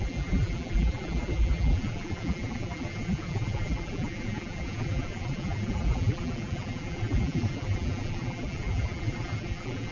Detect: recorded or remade remade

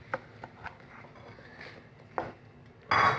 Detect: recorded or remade recorded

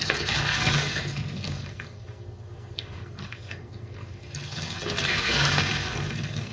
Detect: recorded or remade remade